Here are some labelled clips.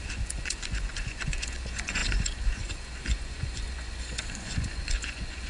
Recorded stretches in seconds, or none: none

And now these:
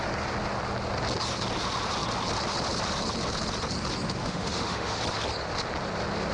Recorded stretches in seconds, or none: 0.0-4.2; 5.0-6.3

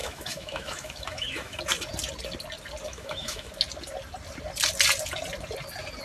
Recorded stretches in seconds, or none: 1.6-2.9; 3.5-6.0

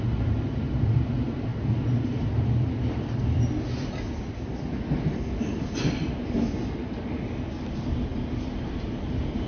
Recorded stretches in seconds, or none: 0.0-9.5

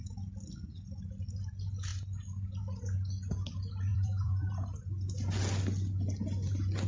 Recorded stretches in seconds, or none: 0.0-3.9; 4.5-6.9

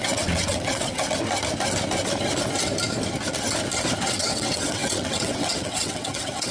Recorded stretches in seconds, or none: 1.0-4.0

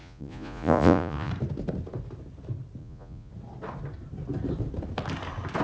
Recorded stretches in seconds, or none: 1.3-2.8; 3.3-5.6